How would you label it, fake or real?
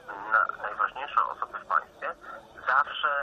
fake